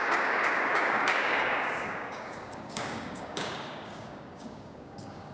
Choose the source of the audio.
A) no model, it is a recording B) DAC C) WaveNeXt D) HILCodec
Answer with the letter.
B